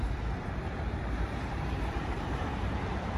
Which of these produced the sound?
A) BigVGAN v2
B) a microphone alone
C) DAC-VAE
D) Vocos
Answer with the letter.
A